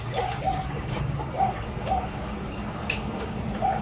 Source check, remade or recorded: remade